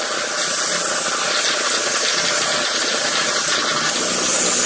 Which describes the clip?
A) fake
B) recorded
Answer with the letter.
B